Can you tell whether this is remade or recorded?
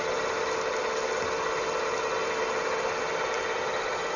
recorded